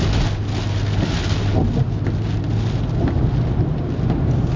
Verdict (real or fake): real